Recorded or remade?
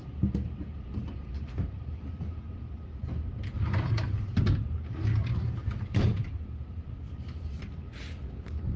recorded